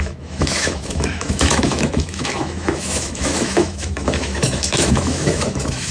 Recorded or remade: remade